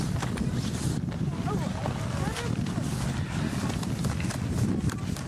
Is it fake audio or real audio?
real